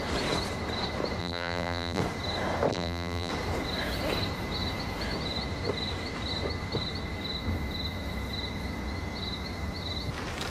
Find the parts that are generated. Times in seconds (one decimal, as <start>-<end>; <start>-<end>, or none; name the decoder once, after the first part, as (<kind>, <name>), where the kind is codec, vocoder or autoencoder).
1.2-2.0 (vocoder, BigVGAN v2); 2.7-3.3